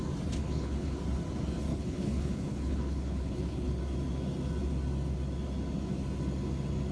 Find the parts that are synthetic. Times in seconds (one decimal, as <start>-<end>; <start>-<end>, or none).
0.4-1.0; 1.7-3.8